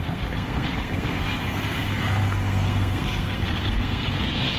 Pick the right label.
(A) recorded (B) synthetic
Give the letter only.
B